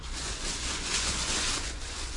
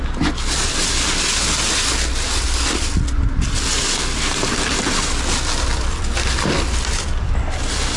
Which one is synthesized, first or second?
first